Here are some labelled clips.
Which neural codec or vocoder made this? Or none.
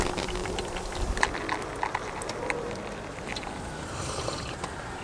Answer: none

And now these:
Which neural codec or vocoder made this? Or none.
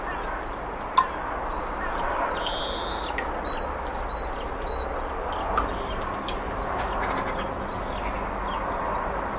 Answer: none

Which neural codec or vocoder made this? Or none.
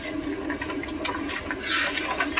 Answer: none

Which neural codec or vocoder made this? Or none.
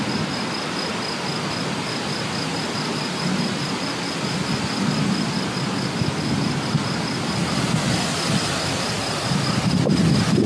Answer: none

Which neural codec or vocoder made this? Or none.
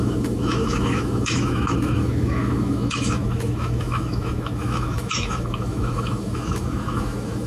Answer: autoencoder, DAC-VAE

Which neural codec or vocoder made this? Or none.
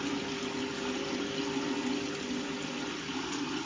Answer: none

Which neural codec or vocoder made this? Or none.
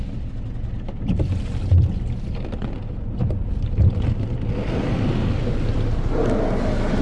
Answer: none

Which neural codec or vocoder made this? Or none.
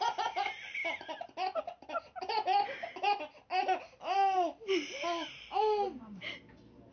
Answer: none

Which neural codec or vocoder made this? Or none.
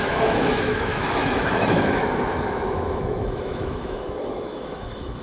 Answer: autoencoder, DAC-VAE